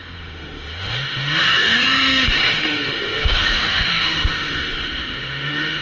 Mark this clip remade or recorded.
remade